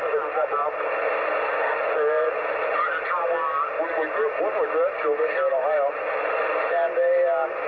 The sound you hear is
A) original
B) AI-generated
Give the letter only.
A